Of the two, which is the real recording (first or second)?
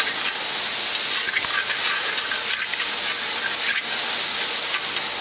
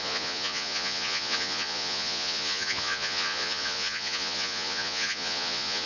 first